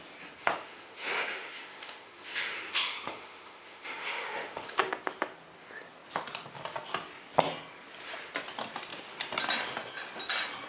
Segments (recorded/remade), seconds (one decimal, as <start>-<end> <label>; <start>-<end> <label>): 0.0-0.4 recorded; 0.4-4.8 remade; 4.8-10.7 recorded